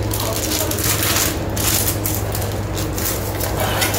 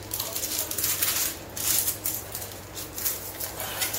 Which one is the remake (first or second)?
second